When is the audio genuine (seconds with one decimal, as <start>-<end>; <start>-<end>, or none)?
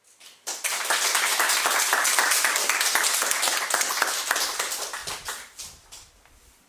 0.0-0.7; 3.3-5.0; 6.1-6.7